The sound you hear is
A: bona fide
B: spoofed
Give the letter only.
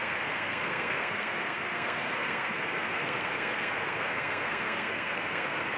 B